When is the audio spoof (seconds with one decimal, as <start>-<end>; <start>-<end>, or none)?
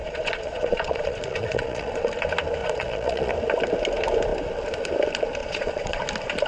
0.0-2.1; 2.6-3.3; 5.4-6.0